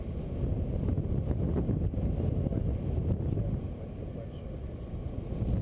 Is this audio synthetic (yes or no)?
no